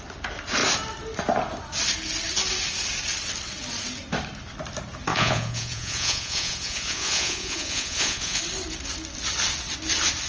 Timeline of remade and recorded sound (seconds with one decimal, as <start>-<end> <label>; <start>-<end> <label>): 0.0-5.1 recorded; 5.1-8.4 remade; 8.4-10.3 recorded